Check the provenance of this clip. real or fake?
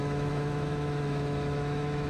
fake